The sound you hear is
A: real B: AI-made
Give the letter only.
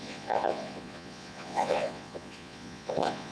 B